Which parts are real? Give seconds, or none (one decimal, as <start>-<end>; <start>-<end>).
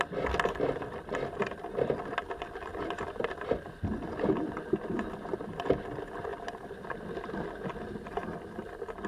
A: 0.0-9.1